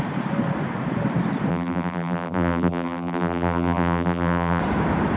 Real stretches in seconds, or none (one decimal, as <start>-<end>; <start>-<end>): 0.0-1.5; 4.6-5.2